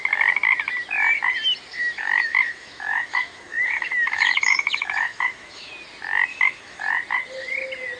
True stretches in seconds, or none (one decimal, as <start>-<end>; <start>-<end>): 0.0-1.7; 5.7-6.3; 6.8-8.0